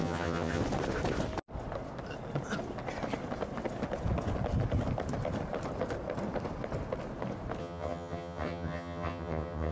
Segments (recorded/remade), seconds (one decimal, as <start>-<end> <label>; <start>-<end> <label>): 0.0-0.6 remade; 0.6-7.6 recorded; 7.6-9.7 remade